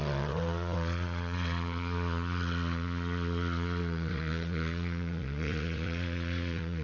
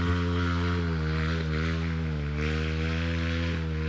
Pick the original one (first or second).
second